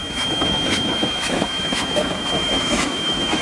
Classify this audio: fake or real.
fake